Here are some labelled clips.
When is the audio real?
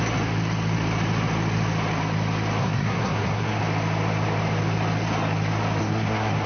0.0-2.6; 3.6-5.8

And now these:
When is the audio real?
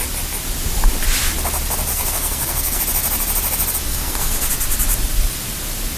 0.0-1.9; 2.8-3.9; 4.5-6.0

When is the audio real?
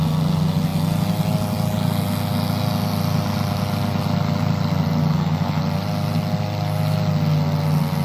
0.0-5.1; 5.6-8.0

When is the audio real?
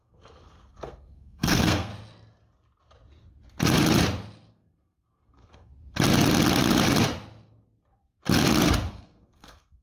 1.9-4.5; 5.7-8.9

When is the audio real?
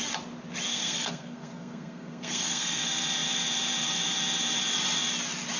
0.0-0.7; 2.8-5.6